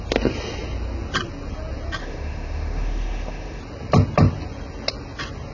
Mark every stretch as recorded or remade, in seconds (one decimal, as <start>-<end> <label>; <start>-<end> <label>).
0.0-2.0 recorded; 2.0-3.6 remade; 3.6-5.5 recorded